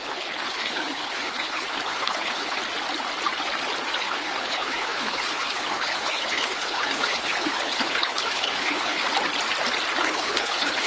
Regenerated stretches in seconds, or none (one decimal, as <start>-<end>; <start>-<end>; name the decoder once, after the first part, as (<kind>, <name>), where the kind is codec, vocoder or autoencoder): 0.0-2.6 (codec, HILCodec); 4.0-9.0; 10.0-10.9